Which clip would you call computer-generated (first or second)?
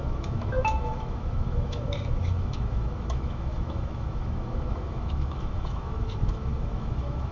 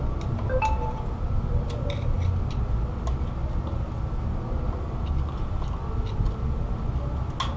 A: first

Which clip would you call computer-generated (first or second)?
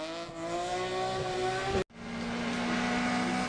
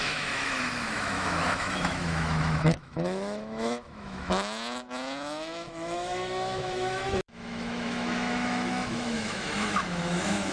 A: second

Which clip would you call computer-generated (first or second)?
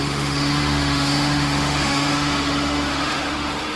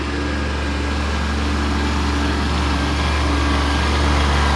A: first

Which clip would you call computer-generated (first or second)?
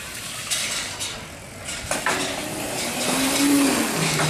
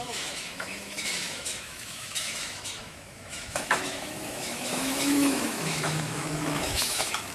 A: second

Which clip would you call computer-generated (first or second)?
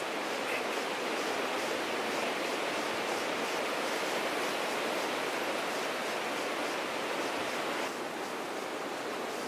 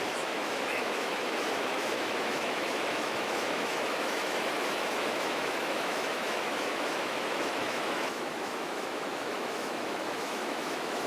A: second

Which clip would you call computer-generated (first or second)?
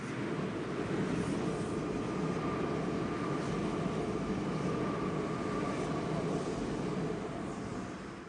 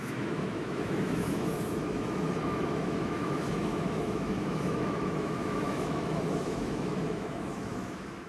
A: second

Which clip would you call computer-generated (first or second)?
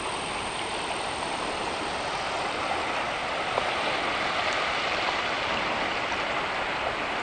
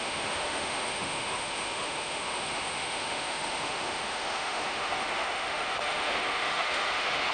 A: second